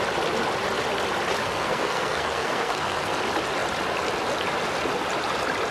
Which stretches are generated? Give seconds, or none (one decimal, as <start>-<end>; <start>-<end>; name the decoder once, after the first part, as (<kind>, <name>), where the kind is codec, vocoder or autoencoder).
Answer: 1.4-3.2 (codec, SNAC)